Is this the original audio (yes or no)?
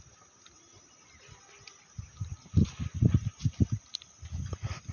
yes